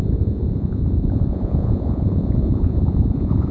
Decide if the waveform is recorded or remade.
remade